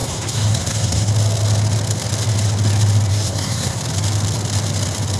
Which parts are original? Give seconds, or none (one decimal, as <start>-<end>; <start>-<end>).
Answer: 1.1-3.1; 3.8-5.2